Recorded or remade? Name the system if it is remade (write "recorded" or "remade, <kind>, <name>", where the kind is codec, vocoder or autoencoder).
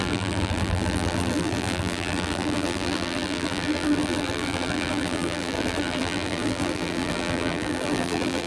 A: remade, vocoder, BigVGAN v2